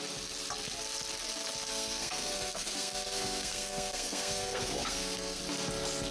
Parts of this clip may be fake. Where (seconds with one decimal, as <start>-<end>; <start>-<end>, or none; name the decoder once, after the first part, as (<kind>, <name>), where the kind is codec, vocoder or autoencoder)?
1.7-5.4 (codec, SNAC)